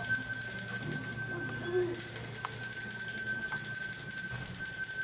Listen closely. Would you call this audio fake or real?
real